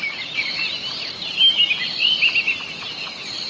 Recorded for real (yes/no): yes